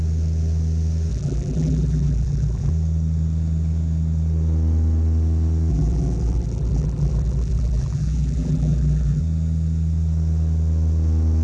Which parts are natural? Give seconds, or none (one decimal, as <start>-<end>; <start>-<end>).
0.0-1.1; 2.7-5.7; 9.2-11.4